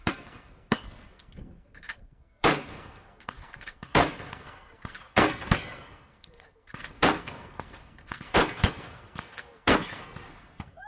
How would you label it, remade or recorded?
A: remade